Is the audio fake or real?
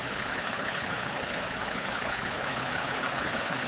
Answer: fake